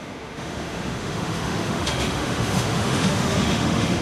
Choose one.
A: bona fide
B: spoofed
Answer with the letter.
B